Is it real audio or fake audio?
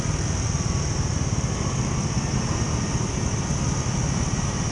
real